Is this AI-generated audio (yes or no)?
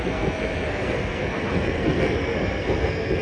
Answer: yes